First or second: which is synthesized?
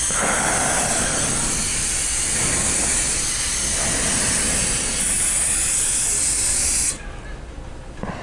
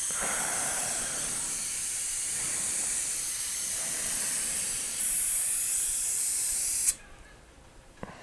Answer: second